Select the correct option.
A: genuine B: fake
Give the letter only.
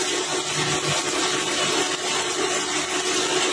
A